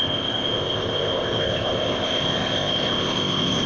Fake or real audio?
fake